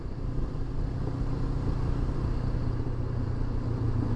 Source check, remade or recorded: recorded